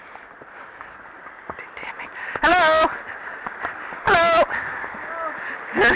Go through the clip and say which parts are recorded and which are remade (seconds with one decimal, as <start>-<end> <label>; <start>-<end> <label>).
0.0-6.0 recorded